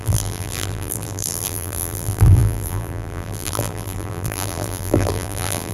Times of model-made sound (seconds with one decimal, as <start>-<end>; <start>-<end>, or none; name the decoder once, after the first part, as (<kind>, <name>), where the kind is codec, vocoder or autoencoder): 0.0-5.7 (vocoder, BigVGAN v2)